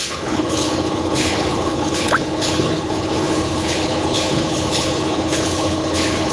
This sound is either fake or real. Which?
fake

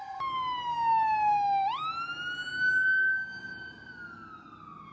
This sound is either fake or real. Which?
real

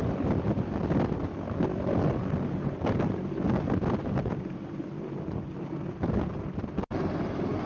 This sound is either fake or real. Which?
real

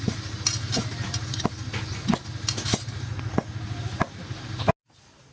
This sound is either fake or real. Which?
real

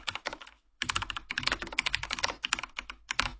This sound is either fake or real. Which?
fake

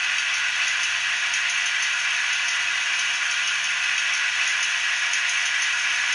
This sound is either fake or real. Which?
real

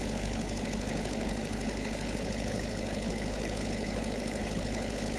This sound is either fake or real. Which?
fake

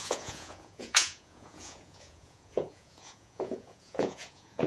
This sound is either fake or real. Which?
fake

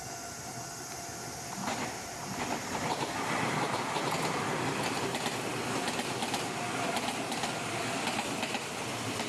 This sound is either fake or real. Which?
real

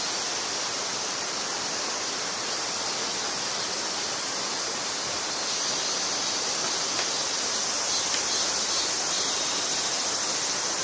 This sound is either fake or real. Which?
real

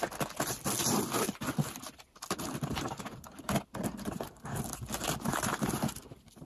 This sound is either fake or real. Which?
real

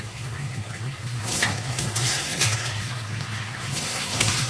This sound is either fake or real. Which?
fake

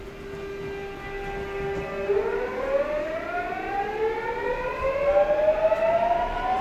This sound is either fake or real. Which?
real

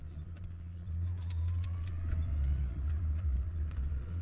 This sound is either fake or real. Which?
fake